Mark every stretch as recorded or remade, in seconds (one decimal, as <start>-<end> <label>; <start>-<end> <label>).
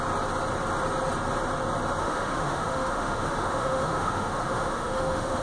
0.0-2.0 recorded; 2.0-5.4 remade